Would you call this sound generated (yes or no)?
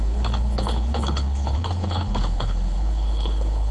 yes